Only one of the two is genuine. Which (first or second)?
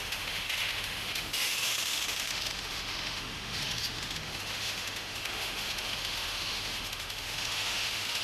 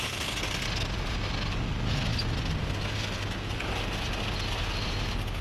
second